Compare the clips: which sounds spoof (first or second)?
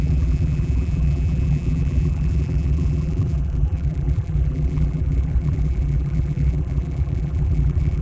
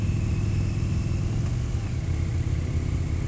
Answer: first